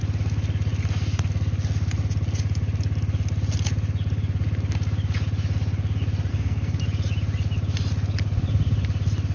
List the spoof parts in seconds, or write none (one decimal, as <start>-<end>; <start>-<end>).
6.3-6.8